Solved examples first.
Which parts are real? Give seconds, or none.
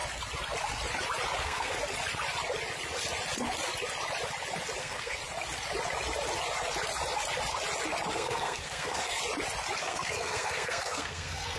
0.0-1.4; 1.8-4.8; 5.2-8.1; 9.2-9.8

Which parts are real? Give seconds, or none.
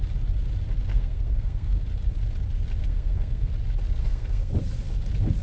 0.0-0.9; 1.8-2.8; 3.5-4.0; 4.5-5.4